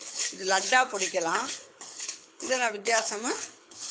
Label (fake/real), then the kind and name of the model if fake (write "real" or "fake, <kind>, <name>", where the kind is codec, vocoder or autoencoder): fake, codec, HILCodec